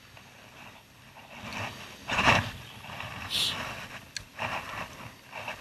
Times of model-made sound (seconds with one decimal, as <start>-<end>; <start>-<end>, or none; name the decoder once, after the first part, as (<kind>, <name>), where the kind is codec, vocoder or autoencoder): none